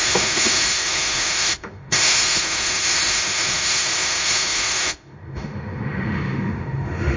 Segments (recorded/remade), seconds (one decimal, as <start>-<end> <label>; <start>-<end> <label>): 0.0-7.2 remade